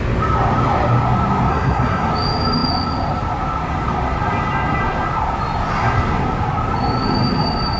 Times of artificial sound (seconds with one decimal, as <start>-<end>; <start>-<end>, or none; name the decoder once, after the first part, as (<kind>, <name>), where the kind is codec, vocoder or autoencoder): 1.5-2.1 (codec, SNAC)